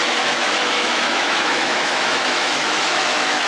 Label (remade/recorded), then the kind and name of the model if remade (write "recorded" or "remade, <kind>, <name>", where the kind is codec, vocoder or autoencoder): remade, autoencoder, DAC-VAE